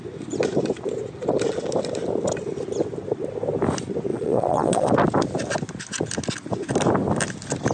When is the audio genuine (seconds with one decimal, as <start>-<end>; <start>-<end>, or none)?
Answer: 0.0-4.1; 4.9-7.7